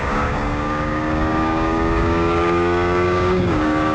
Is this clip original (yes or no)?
no